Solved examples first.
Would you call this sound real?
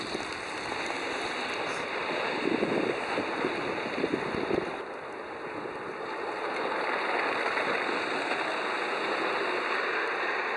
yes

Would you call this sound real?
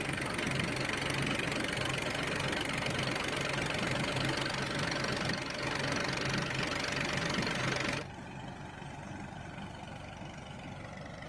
yes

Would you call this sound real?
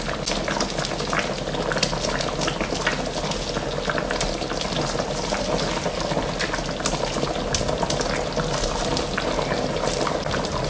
yes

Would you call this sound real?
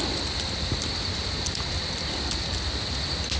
yes